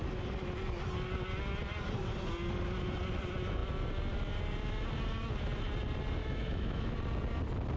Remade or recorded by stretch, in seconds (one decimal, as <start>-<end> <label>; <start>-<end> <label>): 0.0-6.2 recorded; 6.2-7.0 remade; 7.0-7.8 recorded